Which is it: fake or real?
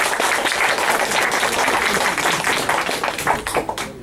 real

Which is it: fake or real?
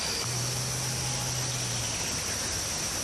real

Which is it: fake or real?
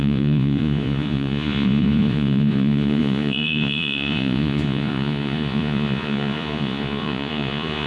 fake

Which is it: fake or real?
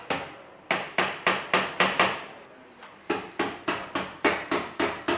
real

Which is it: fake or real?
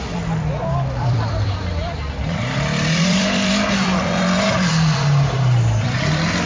fake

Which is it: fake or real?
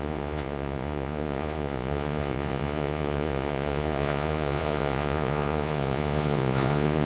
fake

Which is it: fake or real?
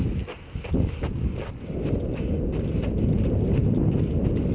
real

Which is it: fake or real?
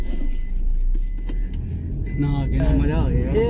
real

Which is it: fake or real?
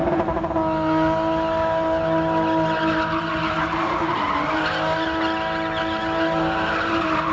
real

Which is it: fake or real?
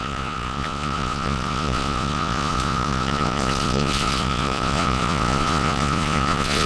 fake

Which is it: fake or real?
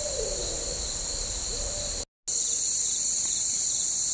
real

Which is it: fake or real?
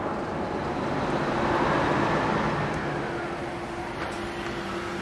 real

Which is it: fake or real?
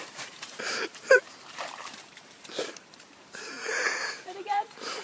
fake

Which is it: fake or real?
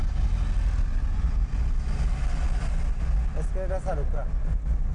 real